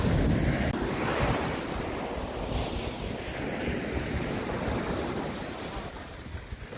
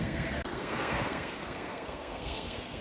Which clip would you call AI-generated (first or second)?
second